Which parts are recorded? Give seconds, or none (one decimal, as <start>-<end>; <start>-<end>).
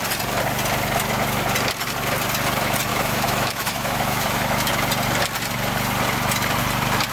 0.0-2.9; 4.7-7.1